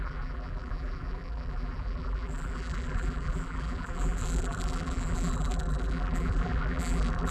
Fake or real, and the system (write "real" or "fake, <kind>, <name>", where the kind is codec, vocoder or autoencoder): fake, vocoder, BigVGAN v2